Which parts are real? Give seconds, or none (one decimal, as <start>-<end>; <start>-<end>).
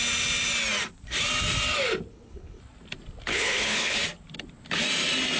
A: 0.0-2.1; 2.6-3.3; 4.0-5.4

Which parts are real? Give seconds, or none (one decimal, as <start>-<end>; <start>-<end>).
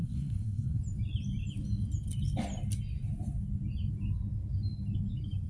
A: 0.8-5.5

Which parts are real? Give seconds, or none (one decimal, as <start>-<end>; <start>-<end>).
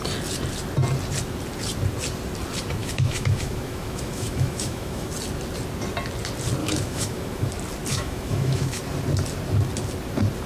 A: 0.0-2.8; 5.1-6.6; 7.5-7.9; 8.8-10.5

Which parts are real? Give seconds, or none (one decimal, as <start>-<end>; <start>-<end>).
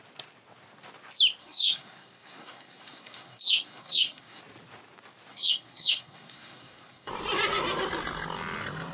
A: 0.0-1.4; 4.4-5.3; 7.1-8.9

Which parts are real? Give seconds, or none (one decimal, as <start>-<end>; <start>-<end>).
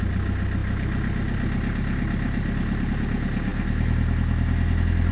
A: 0.0-5.1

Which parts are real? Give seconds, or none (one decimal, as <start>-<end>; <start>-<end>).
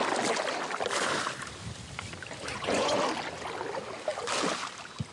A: 0.0-2.5; 3.0-5.1